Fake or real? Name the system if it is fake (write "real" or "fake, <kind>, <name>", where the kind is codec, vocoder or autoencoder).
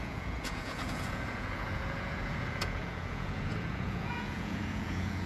fake, vocoder, Vocos